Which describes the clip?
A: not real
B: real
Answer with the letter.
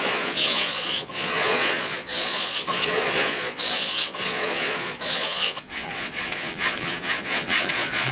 A